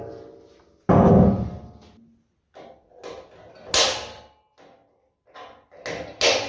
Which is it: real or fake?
real